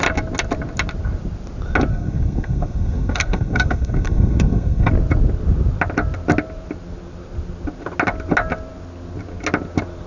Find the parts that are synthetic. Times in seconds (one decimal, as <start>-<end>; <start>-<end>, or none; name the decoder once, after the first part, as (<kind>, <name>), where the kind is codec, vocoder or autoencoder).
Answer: 1.9-4.9 (codec, SNAC)